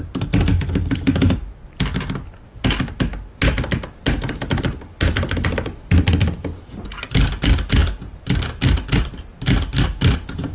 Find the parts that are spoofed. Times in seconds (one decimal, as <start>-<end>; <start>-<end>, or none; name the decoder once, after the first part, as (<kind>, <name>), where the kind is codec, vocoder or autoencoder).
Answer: none